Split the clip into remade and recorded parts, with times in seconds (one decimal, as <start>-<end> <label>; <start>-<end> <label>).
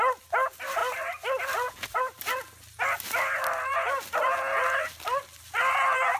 0.0-6.2 recorded